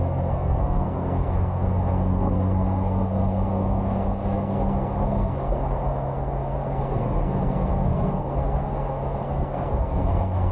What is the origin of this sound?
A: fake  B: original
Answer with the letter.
A